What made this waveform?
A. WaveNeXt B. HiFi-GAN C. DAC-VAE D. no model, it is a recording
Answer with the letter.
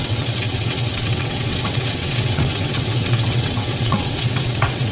A